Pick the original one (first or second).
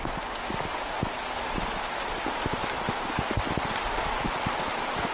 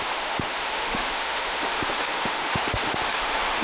first